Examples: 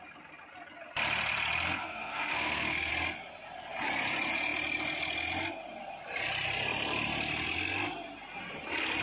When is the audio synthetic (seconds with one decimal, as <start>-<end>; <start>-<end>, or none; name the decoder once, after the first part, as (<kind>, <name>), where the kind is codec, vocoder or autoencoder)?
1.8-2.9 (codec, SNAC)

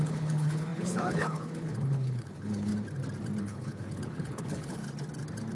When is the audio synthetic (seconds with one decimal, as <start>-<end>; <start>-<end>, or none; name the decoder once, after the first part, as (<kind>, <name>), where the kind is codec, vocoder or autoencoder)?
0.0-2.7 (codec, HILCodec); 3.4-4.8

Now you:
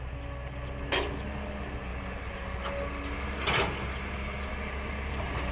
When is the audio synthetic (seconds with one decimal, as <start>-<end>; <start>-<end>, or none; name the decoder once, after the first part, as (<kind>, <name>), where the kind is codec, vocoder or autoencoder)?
none

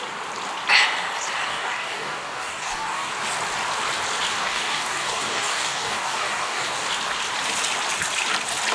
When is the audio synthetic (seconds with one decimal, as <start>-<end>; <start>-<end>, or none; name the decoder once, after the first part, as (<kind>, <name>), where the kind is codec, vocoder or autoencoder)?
1.5-3.1 (codec, DAC); 4.3-6.9

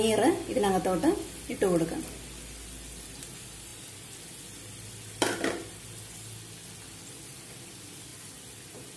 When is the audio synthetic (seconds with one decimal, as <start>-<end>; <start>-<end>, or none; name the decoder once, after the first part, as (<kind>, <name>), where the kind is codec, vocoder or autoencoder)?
none

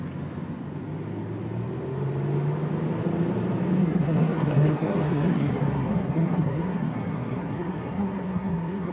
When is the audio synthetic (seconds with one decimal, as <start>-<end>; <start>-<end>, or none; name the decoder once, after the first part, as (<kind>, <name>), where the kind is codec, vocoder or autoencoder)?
3.8-8.9 (codec, SNAC)

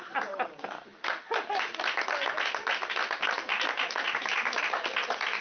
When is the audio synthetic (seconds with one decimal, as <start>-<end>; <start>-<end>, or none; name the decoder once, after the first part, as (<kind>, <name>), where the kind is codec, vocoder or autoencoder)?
3.5-4.6 (vocoder, BigVGAN v2)